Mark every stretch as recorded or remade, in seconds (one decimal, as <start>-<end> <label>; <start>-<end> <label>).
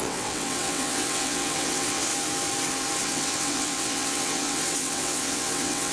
0.0-2.1 remade; 2.1-3.0 recorded; 3.0-5.9 remade